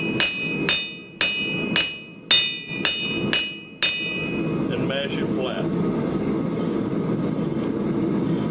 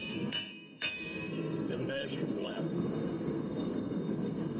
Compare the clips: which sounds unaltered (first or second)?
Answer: first